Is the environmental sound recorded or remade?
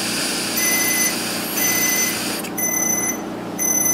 remade